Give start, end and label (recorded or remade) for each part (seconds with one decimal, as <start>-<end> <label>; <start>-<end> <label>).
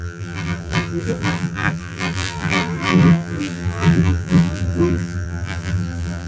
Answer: 0.0-6.3 remade